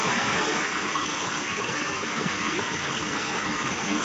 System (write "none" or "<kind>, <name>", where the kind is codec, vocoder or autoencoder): codec, SNAC